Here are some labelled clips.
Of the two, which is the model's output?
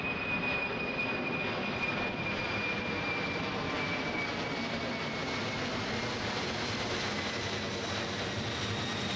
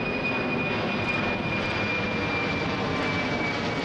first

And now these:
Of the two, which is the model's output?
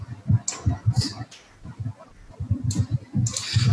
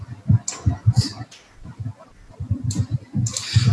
second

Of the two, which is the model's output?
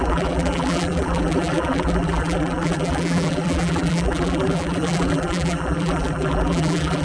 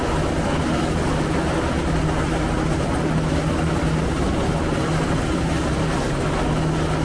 first